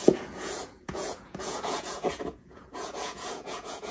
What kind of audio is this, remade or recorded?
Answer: remade